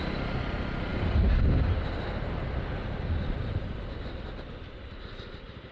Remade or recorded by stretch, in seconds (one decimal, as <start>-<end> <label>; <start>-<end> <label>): 0.0-5.7 recorded